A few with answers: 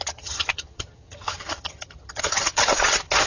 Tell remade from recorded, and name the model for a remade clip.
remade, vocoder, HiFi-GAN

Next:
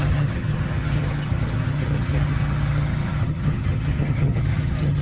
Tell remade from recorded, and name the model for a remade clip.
remade, vocoder, HiFi-GAN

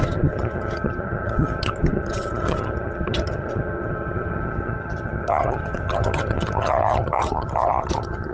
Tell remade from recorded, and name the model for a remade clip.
remade, vocoder, HiFi-GAN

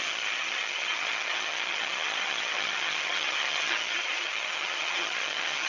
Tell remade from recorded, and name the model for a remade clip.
remade, vocoder, HiFi-GAN